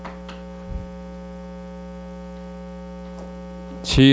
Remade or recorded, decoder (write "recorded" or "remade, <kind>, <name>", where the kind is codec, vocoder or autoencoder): recorded